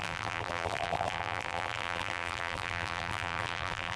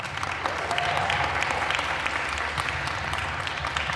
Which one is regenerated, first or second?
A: first